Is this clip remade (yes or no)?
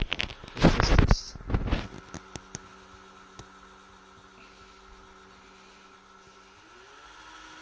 no